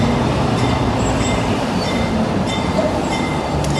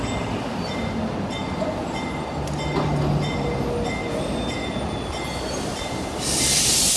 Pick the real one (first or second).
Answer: second